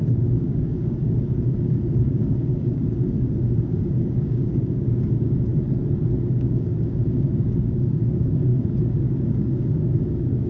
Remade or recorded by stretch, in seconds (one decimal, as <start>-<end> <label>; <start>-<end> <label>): 0.0-2.8 remade; 2.8-3.6 recorded; 3.6-5.5 remade; 5.5-6.2 recorded; 6.2-10.5 remade